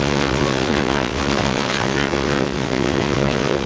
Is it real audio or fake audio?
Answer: fake